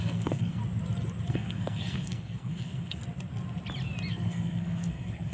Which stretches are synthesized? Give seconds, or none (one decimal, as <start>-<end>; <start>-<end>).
0.0-0.6; 1.3-3.0; 4.1-5.3